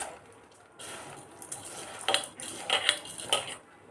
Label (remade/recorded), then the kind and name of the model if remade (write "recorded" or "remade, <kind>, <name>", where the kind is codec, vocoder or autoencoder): recorded